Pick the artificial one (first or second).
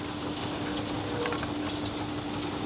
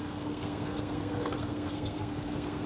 second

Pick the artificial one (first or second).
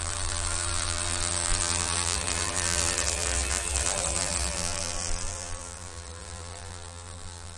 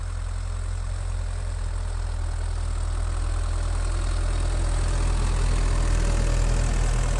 first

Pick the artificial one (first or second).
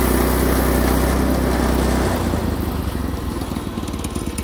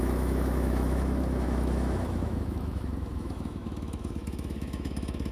second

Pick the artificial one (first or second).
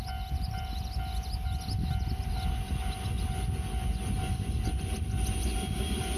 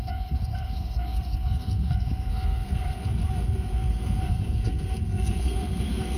second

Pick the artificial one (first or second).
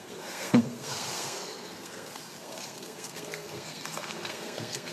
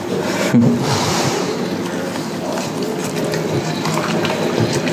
first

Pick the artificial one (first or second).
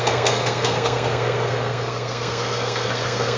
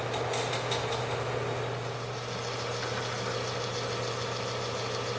first